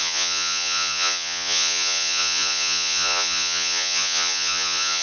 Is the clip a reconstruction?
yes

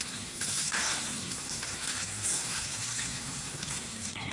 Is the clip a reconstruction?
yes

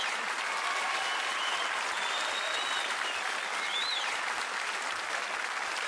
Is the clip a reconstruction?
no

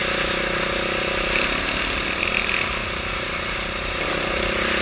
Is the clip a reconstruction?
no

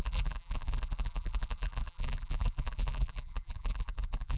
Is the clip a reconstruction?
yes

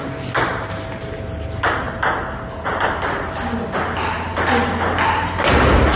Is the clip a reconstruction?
no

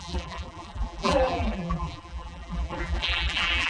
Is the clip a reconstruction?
yes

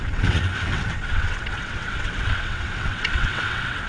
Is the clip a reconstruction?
yes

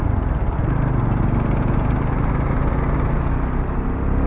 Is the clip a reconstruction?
no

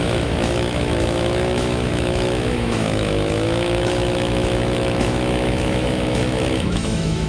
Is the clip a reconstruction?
yes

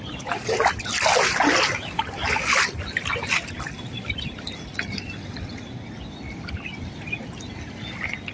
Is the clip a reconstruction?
no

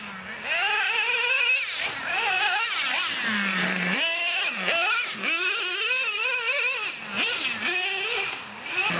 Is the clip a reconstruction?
no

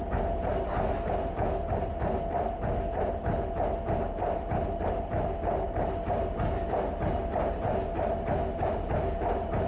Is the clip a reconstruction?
no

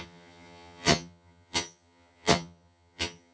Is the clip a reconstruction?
yes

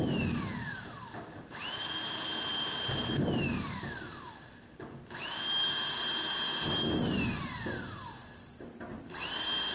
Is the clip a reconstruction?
no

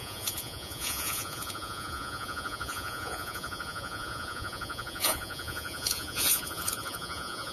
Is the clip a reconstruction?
yes